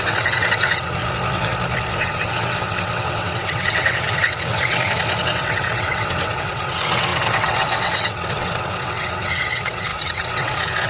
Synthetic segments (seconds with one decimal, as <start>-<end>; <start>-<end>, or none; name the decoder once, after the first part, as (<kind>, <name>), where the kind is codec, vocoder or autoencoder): 0.0-1.0 (vocoder, WaveNeXt); 2.0-10.9